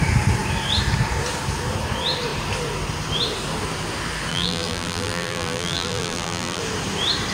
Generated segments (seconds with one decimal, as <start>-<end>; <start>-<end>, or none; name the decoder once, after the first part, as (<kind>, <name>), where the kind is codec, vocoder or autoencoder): 4.3-6.6 (vocoder, BigVGAN v2)